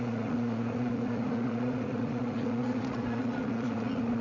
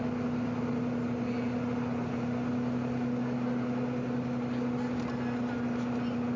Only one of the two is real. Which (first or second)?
second